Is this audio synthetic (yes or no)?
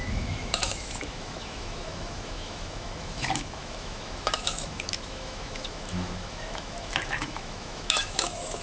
yes